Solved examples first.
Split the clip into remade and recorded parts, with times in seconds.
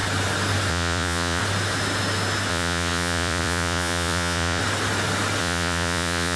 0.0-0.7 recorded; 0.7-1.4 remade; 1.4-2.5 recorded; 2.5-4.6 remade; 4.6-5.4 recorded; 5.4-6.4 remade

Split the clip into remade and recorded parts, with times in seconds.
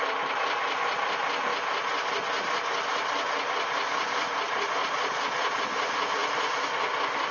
0.0-4.8 recorded; 4.8-5.6 remade; 5.6-7.3 recorded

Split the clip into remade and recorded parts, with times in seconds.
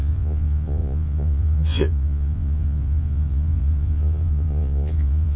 0.0-5.4 remade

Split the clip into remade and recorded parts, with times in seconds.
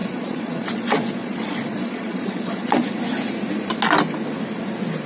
0.0-2.9 remade; 2.9-5.1 recorded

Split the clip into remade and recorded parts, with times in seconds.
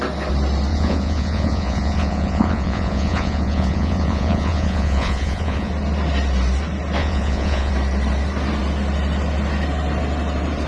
0.0-0.7 recorded; 0.7-5.7 remade; 5.7-7.0 recorded; 7.0-7.7 remade; 7.7-10.7 recorded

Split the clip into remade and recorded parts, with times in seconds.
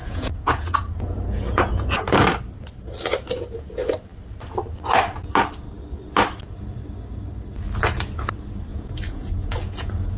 0.0-2.0 remade; 2.0-8.7 recorded; 8.7-10.2 remade